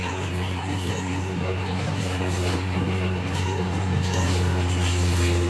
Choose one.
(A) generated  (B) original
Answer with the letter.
A